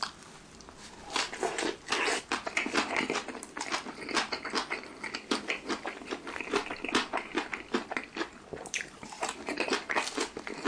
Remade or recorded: recorded